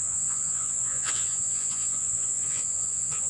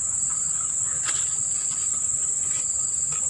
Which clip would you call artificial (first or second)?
first